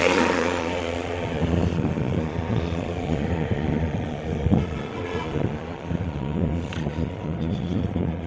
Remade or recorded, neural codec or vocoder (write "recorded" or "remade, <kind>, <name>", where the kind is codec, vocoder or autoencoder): remade, vocoder, Vocos